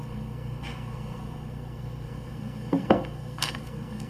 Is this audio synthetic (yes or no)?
yes